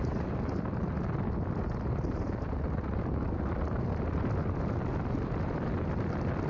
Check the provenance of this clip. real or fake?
real